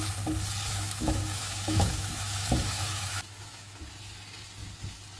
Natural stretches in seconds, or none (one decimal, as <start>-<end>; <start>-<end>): 0.0-0.7; 3.8-5.2